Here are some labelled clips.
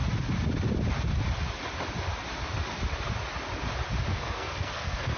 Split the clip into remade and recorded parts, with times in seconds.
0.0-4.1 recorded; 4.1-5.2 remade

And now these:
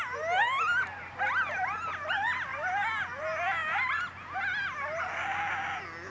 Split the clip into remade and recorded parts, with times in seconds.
0.0-6.1 recorded

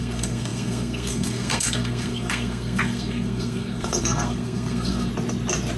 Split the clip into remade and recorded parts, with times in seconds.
0.0-5.1 remade; 5.1-5.8 recorded

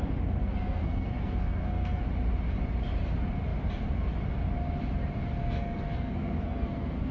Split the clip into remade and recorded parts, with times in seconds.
0.0-0.4 recorded; 0.4-2.0 remade; 2.0-5.4 recorded; 5.4-7.1 remade

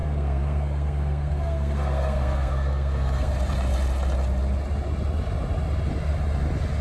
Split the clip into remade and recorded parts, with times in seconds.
0.0-3.3 remade; 3.3-6.8 recorded

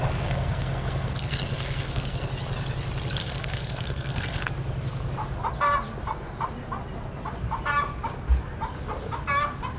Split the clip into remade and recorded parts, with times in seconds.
0.0-2.3 remade; 2.3-3.2 recorded; 3.2-4.5 remade; 4.5-9.8 recorded

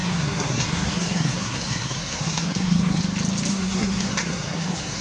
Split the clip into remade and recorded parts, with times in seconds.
0.0-3.0 remade; 3.0-3.5 recorded; 3.5-5.0 remade